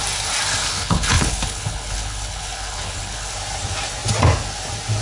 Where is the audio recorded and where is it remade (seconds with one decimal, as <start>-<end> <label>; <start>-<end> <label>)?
0.0-0.6 recorded; 0.6-3.3 remade; 3.3-5.0 recorded